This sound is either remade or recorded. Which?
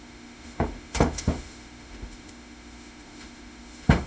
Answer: remade